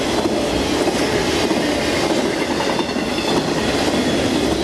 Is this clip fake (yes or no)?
no